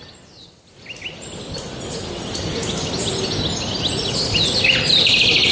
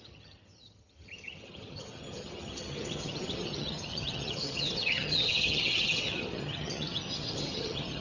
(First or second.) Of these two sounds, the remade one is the second